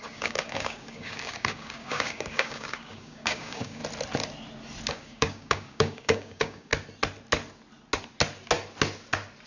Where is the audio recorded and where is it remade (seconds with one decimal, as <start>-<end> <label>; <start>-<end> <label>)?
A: 0.0-3.8 remade; 3.8-4.9 recorded; 4.9-6.7 remade; 6.7-9.5 recorded